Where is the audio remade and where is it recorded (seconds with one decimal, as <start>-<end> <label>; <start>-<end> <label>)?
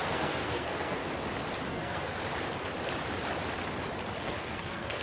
0.0-1.0 remade; 1.0-1.7 recorded; 1.7-2.2 remade; 2.2-4.2 recorded; 4.2-5.0 remade